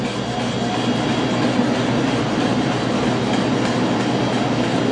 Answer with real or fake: real